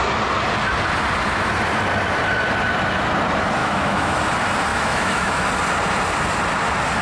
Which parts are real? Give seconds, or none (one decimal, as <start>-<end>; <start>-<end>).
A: 0.0-3.6; 4.2-4.7; 5.5-7.0

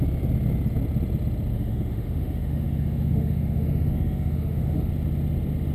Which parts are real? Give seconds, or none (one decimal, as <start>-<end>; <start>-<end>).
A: 0.0-1.5; 4.9-5.7

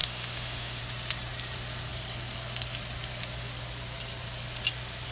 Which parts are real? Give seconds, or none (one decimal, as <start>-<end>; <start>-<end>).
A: 0.8-5.1